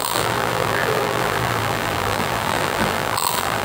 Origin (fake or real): fake